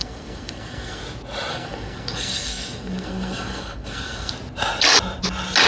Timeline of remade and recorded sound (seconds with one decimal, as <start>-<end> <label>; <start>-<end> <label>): 0.0-1.0 remade; 1.0-1.5 recorded; 1.5-4.3 remade; 4.3-5.7 recorded